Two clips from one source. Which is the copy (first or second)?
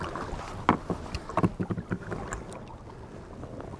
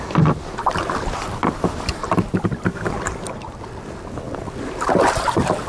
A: second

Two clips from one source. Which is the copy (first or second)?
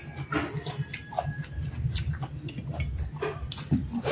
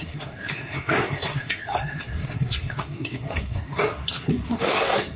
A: second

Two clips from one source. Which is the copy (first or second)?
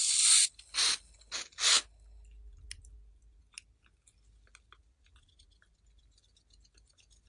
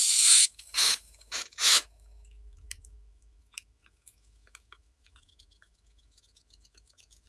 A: second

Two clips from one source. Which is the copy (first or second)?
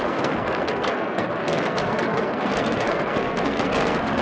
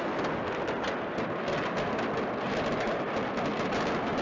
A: first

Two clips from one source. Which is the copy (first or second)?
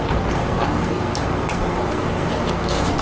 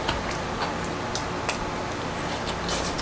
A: first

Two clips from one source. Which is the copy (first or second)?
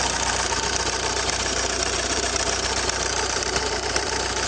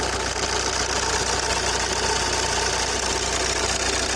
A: first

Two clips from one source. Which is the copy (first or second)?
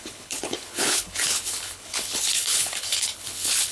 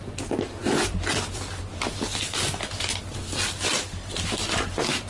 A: first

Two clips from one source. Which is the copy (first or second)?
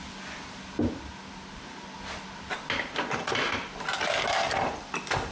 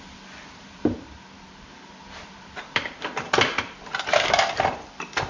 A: second